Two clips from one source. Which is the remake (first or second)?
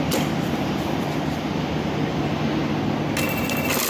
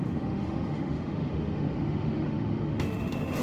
second